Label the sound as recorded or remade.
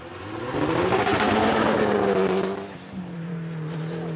recorded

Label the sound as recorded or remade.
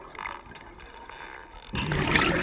recorded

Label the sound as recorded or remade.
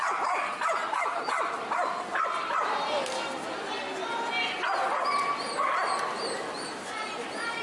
recorded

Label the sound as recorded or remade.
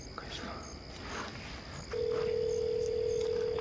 recorded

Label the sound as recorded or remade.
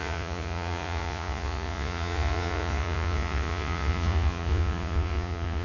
remade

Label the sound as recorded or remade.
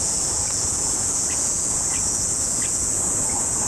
remade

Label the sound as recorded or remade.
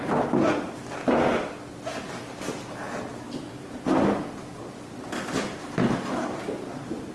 recorded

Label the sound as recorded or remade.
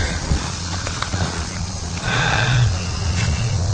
remade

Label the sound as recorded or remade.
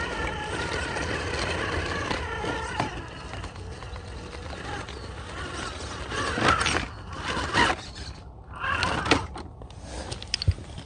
recorded